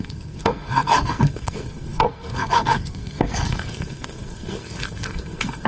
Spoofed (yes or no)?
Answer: yes